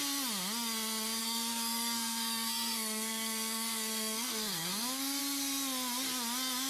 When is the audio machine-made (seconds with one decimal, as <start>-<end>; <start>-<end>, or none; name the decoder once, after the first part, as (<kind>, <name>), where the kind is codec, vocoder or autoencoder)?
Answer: 1.2-5.2 (codec, SNAC)